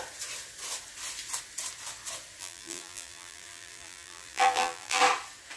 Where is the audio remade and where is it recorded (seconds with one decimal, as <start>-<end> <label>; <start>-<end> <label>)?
0.0-2.4 recorded; 2.4-5.0 remade; 5.0-5.6 recorded